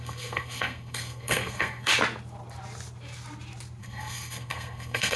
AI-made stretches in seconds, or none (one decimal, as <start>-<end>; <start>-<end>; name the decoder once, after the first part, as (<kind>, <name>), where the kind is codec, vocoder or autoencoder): 0.0-1.9 (codec, SNAC); 3.8-5.2